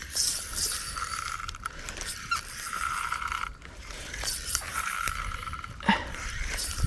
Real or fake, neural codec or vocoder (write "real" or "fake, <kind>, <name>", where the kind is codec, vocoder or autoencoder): fake, vocoder, BigVGAN v2